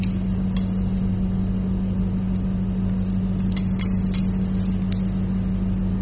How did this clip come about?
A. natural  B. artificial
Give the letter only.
A